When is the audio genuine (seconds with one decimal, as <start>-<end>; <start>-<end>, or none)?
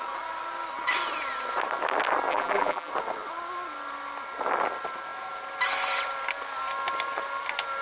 0.0-2.3; 2.9-7.8